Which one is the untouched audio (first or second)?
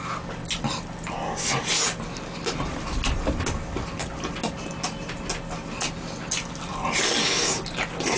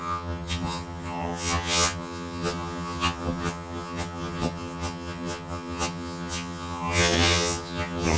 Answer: first